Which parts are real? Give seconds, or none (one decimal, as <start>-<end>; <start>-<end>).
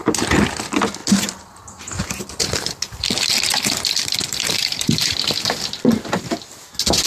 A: 0.0-1.0; 2.3-3.5; 5.1-7.1